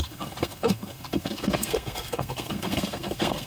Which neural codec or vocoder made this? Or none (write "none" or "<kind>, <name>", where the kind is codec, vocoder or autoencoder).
codec, SNAC